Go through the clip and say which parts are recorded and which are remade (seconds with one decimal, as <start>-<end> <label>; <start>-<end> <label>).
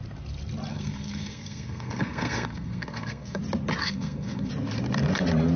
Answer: 0.0-0.7 recorded; 0.7-3.4 remade; 3.4-3.8 recorded; 3.8-4.5 remade; 4.5-5.6 recorded